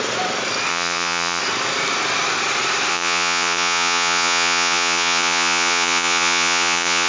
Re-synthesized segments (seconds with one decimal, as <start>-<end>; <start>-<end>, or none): 0.7-1.4; 2.9-7.1